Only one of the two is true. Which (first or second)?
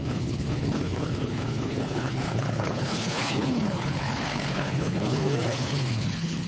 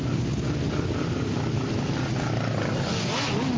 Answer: second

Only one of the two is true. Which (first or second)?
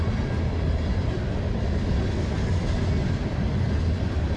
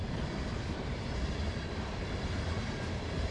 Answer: first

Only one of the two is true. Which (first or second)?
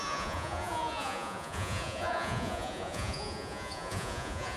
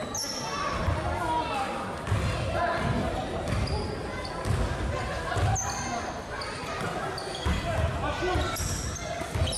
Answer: second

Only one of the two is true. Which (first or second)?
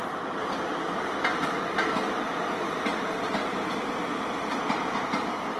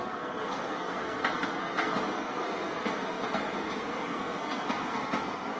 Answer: first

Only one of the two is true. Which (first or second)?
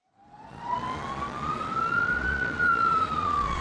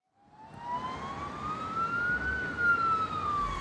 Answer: second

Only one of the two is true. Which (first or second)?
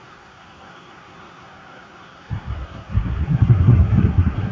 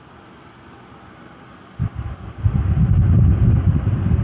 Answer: second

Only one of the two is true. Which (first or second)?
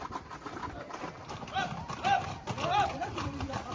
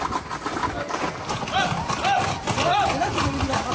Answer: second